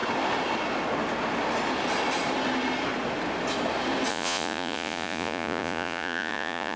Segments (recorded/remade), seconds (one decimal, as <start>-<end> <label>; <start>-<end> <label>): 0.0-4.1 recorded; 4.1-6.8 remade